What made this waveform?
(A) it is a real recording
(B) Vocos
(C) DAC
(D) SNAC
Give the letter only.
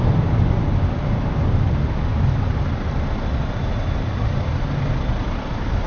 A